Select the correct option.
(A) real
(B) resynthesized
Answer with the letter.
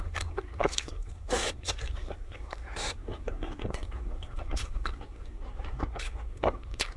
B